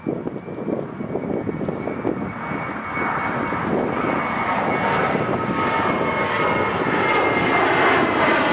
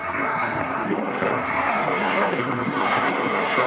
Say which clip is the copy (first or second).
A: second